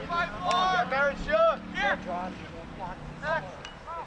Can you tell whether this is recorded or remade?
remade